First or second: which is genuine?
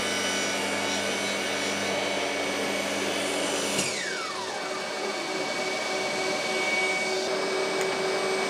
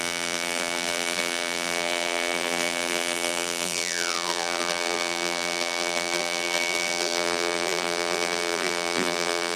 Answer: first